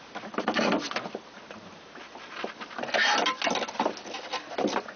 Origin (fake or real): fake